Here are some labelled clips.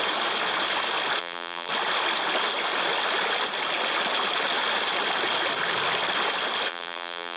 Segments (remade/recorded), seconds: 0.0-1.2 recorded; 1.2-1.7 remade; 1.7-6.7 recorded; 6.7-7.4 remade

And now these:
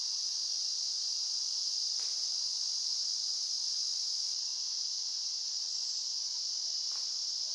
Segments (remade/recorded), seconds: 0.0-4.5 remade; 4.5-5.4 recorded; 5.4-7.5 remade

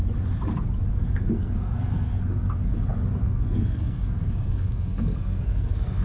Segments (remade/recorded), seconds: 0.0-0.9 recorded; 0.9-2.1 remade; 2.1-3.2 recorded; 3.2-6.0 remade